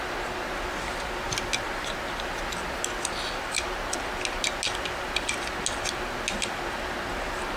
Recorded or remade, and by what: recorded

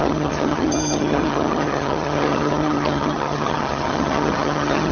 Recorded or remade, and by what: remade, vocoder, HiFi-GAN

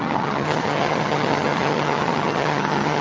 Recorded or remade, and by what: remade, vocoder, HiFi-GAN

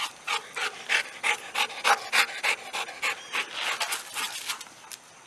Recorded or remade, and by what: recorded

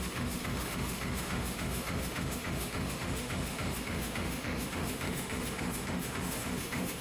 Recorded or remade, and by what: remade, autoencoder, DAC-VAE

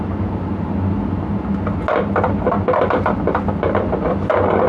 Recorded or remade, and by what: recorded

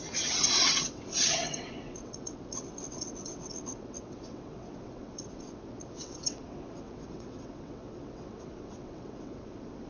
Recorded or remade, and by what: remade, vocoder, WaveNeXt